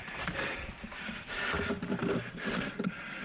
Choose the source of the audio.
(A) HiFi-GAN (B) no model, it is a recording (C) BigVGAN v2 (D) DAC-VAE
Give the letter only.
B